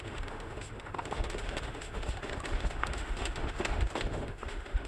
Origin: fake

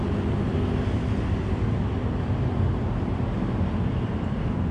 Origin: real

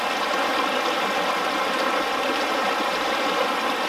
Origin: real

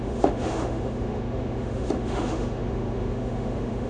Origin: fake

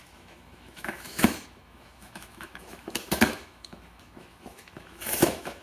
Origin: fake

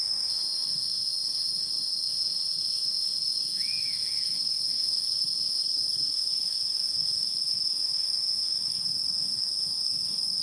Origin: fake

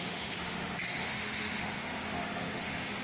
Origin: fake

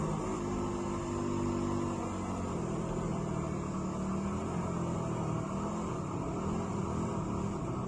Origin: real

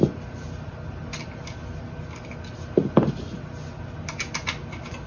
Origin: real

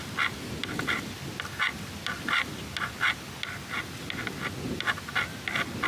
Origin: real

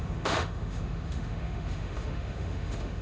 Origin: fake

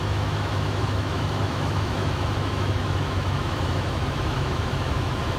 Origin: fake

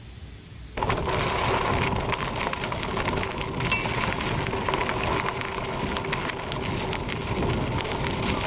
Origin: real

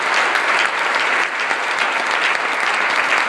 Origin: real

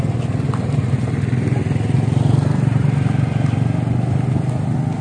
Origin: real